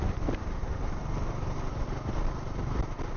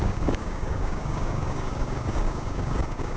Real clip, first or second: first